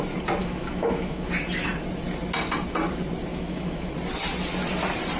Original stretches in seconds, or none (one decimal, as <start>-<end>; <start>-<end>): 0.0-0.4; 1.3-3.3; 3.9-5.2